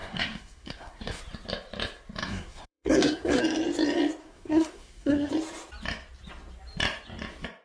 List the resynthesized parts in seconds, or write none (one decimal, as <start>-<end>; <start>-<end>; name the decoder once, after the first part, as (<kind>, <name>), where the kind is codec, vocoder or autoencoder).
0.0-1.2 (codec, SNAC); 2.2-3.4; 4.2-5.3